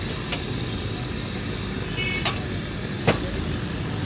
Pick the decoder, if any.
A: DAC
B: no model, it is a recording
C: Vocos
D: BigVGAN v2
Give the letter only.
B